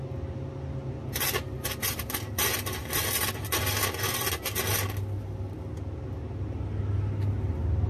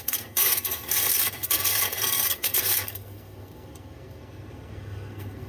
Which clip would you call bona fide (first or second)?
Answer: first